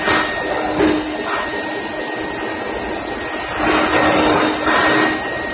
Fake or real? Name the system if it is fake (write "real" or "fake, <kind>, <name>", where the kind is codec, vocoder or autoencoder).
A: real